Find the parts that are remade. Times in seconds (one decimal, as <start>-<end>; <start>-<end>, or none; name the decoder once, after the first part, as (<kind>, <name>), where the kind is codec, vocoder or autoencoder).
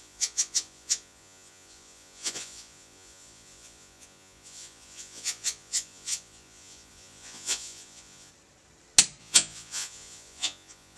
0.0-8.3 (vocoder, Vocos); 9.2-11.0